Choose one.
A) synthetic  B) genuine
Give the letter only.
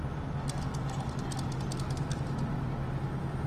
B